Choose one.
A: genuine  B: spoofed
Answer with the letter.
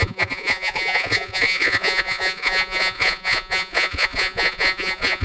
B